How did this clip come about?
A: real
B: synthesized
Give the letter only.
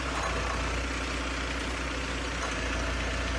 A